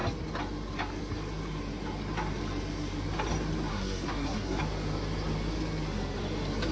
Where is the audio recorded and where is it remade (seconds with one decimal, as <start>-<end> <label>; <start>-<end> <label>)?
0.0-3.7 recorded; 3.7-4.6 remade; 4.6-6.7 recorded